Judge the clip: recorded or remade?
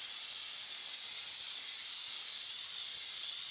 recorded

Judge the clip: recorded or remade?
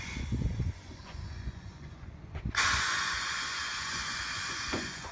remade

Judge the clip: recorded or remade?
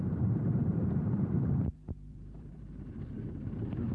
remade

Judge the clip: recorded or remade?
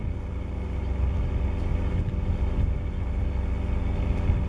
recorded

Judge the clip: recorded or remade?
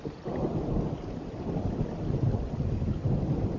remade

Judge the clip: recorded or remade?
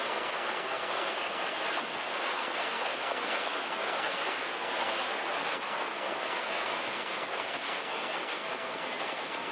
remade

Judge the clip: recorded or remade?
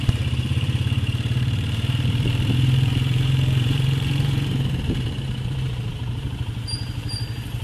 remade